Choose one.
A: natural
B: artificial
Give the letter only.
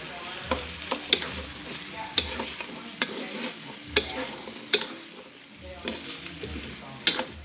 A